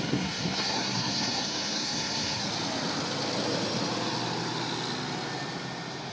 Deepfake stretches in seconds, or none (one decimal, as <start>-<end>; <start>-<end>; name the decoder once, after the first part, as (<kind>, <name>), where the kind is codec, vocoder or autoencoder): 0.0-2.5 (codec, SNAC)